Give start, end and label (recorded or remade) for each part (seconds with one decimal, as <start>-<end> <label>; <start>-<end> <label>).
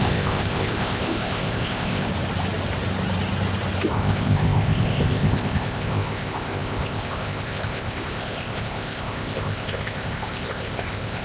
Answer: 0.0-2.1 remade; 2.1-3.8 recorded; 3.8-11.2 remade